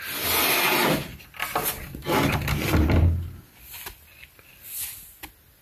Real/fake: real